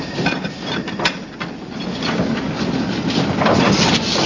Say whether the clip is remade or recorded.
recorded